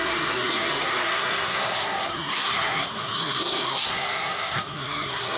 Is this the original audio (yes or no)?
no